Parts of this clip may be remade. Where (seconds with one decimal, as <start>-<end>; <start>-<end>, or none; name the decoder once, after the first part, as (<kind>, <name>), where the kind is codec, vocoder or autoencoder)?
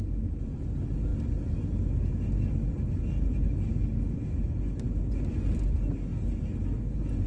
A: none